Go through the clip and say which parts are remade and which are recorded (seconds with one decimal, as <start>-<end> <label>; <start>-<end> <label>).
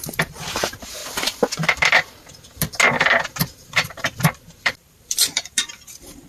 0.0-1.0 remade; 1.0-3.1 recorded; 3.1-6.3 remade